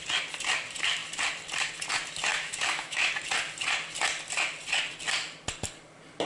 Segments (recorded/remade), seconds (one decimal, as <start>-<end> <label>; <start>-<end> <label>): 0.0-2.3 recorded; 2.3-3.1 remade; 3.1-6.3 recorded